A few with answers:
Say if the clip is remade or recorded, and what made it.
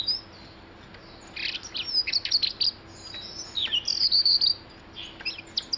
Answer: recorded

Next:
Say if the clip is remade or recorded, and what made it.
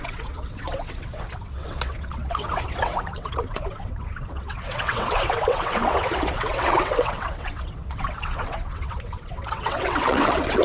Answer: remade, vocoder, WaveNeXt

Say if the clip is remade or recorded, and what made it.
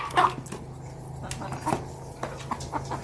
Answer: recorded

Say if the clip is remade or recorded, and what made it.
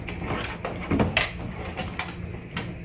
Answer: recorded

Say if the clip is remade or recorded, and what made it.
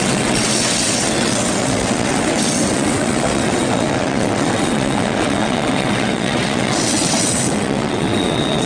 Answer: remade, vocoder, WaveNeXt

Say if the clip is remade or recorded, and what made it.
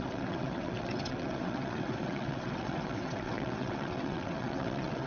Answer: remade, vocoder, WaveNeXt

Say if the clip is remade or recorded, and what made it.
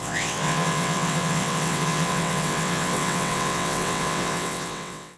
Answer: remade, vocoder, WaveNeXt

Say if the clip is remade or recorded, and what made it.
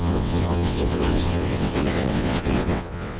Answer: remade, vocoder, WaveNeXt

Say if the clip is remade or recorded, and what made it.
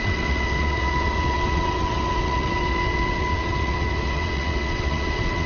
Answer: remade, vocoder, WaveNeXt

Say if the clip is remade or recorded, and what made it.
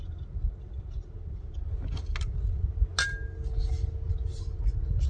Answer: recorded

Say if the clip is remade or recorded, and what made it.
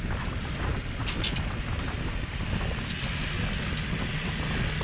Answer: recorded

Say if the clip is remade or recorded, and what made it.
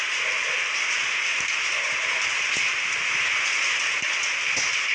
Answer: recorded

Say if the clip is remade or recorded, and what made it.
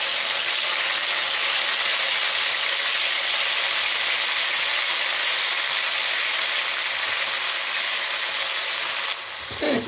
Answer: recorded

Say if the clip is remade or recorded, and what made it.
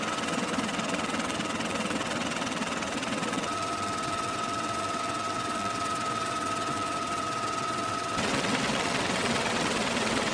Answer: remade, vocoder, WaveNeXt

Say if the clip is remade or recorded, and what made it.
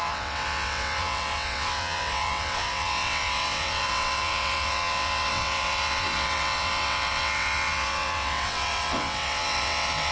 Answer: remade, vocoder, WaveNeXt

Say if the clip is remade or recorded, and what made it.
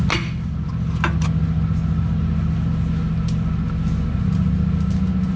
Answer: recorded